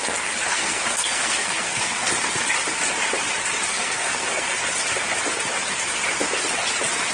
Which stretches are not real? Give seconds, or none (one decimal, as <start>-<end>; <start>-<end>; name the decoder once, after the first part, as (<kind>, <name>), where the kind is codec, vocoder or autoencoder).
0.5-2.1 (codec, SNAC); 3.7-4.6